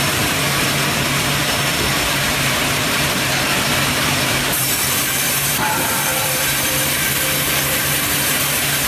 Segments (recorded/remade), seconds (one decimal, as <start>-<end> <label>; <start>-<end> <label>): 0.0-0.4 remade; 0.4-1.2 recorded; 1.2-8.9 remade